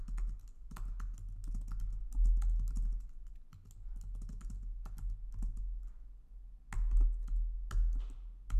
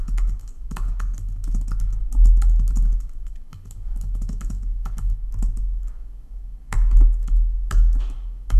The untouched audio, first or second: first